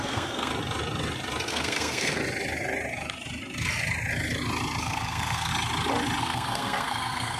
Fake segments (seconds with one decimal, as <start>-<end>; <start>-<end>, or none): 0.0-0.5; 1.5-2.2; 4.8-5.5; 6.2-7.4